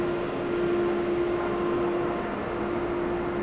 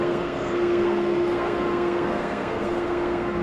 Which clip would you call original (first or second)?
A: first